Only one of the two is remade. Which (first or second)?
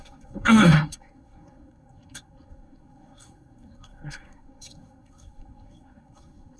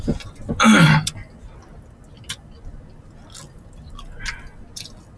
first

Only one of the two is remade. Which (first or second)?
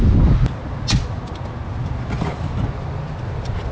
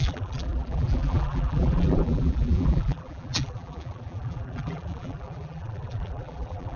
second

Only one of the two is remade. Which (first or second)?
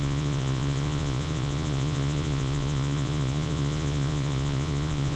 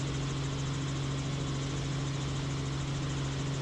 first